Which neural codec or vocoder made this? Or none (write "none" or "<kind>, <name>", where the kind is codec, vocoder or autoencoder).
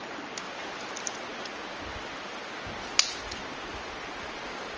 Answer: none